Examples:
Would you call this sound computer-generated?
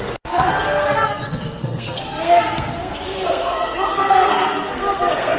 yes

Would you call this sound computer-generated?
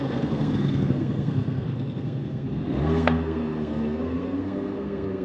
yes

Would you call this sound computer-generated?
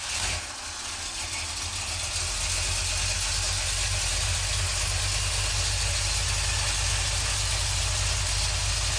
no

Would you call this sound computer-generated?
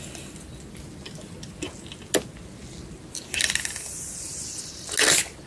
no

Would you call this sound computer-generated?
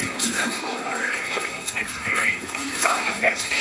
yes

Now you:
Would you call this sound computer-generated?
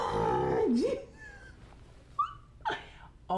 no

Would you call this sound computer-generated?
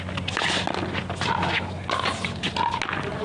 no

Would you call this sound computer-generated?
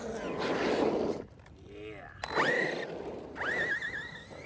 no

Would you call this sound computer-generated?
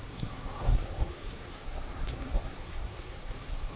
yes